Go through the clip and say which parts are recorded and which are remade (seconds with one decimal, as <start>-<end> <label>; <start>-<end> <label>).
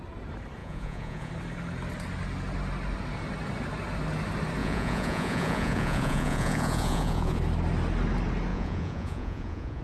0.0-0.6 recorded; 0.6-1.3 remade; 1.3-4.6 recorded; 4.6-7.4 remade; 7.4-8.5 recorded; 8.5-9.8 remade